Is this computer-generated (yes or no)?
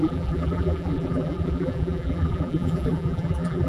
yes